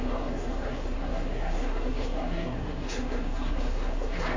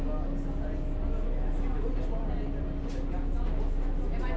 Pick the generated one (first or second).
first